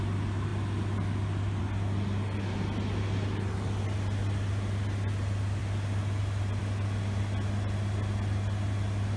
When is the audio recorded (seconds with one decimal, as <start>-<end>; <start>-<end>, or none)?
0.0-9.2